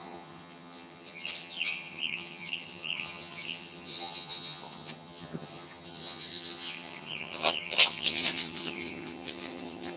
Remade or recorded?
remade